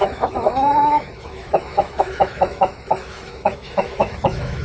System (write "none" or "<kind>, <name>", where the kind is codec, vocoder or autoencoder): autoencoder, DAC-VAE